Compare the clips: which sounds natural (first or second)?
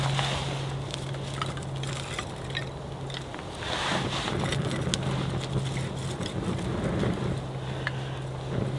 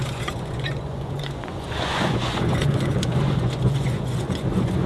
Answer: first